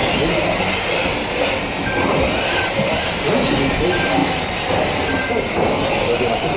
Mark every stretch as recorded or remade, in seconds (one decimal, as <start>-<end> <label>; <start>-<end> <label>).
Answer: 0.0-6.6 recorded